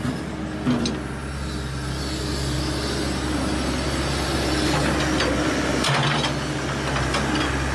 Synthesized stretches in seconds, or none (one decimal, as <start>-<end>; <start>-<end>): none